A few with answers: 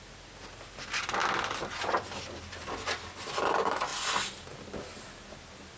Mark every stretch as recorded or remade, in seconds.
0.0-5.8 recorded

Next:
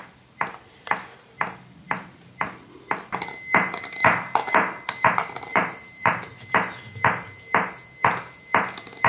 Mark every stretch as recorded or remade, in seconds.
0.0-5.5 recorded; 5.5-6.3 remade; 6.3-9.1 recorded

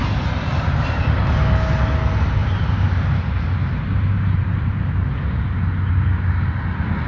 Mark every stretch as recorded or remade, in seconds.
0.0-0.5 recorded; 0.5-1.2 remade; 1.2-2.4 recorded; 2.4-4.9 remade; 4.9-7.1 recorded